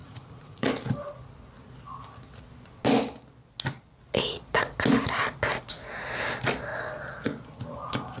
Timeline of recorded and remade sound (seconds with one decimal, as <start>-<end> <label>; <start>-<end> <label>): 0.0-0.7 remade; 0.7-8.2 recorded